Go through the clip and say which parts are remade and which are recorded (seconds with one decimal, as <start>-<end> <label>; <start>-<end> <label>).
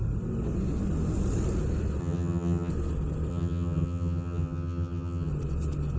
0.0-2.0 recorded; 2.0-2.7 remade; 2.7-3.3 recorded; 3.3-5.3 remade; 5.3-6.0 recorded